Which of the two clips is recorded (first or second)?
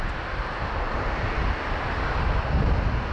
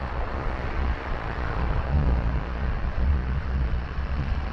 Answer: first